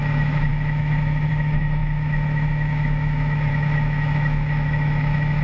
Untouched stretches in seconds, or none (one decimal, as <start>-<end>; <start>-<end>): none